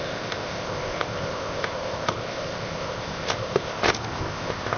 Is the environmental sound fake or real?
fake